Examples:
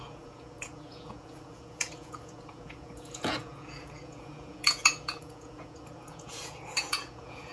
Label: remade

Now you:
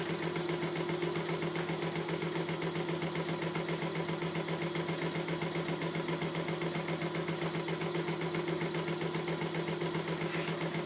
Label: recorded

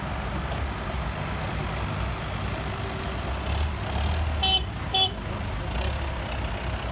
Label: recorded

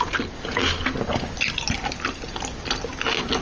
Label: recorded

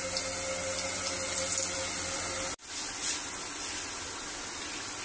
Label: recorded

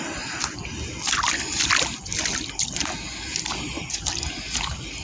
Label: recorded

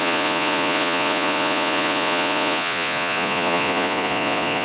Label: remade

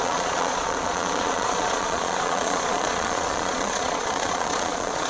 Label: remade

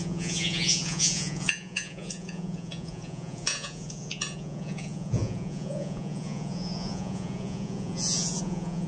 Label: remade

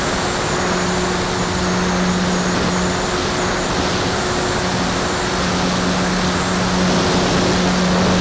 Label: recorded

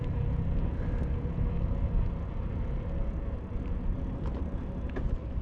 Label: recorded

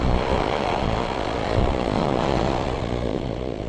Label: remade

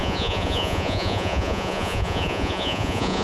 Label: remade